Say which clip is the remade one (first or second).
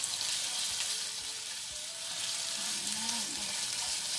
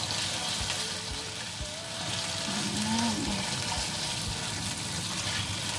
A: first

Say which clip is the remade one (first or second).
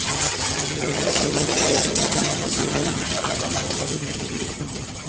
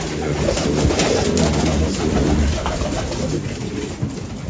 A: first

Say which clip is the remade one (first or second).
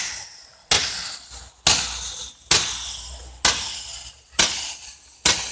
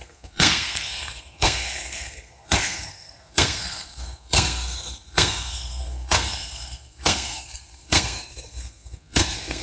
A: second